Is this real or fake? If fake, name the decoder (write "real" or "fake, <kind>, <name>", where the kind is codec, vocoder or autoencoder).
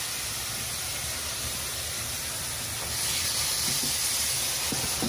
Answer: real